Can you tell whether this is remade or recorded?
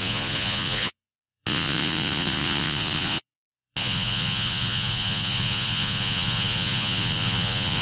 remade